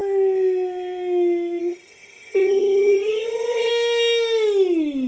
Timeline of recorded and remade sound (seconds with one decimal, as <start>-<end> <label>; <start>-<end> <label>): 0.0-1.6 recorded; 1.6-3.7 remade; 3.7-5.1 recorded